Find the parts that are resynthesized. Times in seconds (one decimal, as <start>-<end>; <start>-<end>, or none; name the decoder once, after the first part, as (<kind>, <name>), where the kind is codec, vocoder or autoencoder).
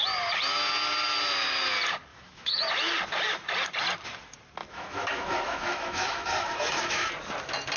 2.1-2.7 (autoencoder, DAC-VAE); 4.6-7.1